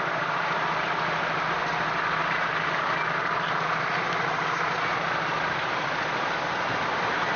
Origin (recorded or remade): recorded